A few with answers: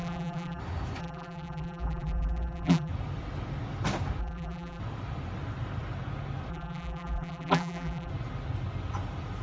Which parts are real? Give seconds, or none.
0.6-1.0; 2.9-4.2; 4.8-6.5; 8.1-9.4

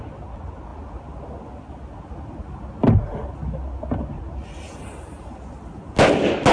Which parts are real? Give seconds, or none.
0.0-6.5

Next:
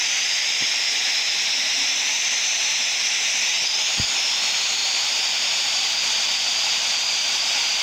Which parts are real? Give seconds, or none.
0.0-7.8